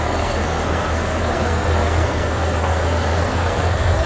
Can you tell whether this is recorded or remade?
remade